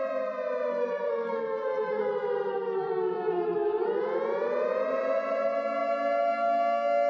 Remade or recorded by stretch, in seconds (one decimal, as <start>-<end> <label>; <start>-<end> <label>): 0.0-0.7 recorded; 0.7-2.1 remade; 2.1-2.5 recorded; 2.5-4.0 remade; 4.0-7.1 recorded